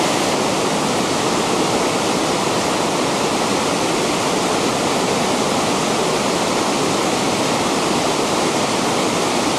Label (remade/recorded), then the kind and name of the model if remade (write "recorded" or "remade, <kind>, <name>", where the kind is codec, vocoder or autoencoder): recorded